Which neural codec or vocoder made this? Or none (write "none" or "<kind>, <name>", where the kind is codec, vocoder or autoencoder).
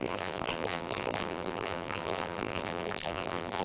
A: vocoder, BigVGAN v2